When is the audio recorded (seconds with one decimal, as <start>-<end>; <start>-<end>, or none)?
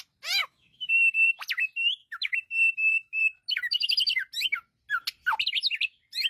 0.0-0.4; 1.1-2.0; 3.2-6.3